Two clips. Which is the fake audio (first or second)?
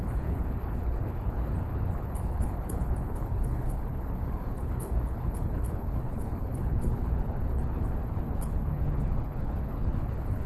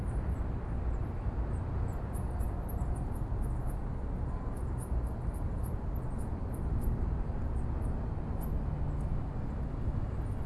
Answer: first